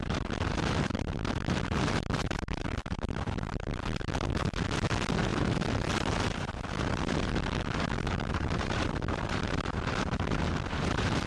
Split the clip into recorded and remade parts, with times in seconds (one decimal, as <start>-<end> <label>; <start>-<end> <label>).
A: 0.0-11.3 remade